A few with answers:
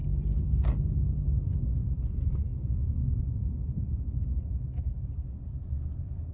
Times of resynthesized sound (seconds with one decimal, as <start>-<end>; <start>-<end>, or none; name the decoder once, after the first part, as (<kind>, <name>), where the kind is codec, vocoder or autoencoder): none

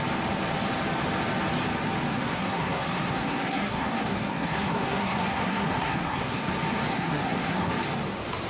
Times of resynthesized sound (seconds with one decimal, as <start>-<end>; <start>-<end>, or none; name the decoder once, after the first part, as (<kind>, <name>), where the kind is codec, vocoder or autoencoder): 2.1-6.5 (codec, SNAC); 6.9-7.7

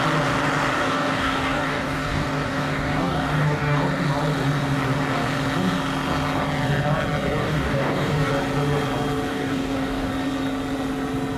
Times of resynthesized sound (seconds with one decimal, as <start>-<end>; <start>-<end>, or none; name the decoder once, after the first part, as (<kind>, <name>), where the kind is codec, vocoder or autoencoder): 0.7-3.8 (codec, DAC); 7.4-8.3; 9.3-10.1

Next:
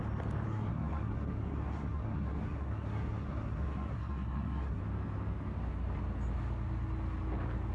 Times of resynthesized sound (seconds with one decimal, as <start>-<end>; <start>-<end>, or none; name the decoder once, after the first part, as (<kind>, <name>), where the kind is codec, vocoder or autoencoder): 0.5-4.8 (codec, SNAC)

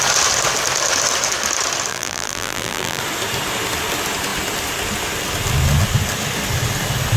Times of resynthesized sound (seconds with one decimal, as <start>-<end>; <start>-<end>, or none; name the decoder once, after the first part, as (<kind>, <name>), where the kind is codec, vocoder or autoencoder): 1.9-3.0 (vocoder, BigVGAN v2)

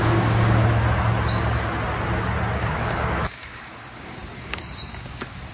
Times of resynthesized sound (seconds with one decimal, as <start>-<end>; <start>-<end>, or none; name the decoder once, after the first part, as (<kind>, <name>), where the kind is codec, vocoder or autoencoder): 0.0-0.6 (codec, DAC); 2.5-5.5

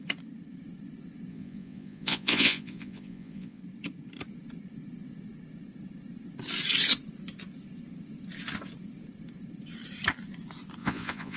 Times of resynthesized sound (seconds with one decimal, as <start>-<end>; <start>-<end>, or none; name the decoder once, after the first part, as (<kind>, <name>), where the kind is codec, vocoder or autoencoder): 1.3-3.6 (vocoder, Vocos); 10.8-11.4

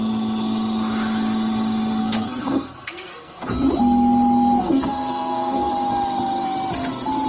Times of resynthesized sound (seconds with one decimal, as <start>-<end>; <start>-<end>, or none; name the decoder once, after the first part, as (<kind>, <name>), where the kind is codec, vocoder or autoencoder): 2.0-3.4 (codec, SNAC); 4.6-5.7